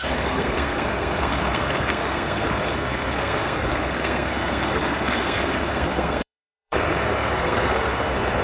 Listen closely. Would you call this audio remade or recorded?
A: remade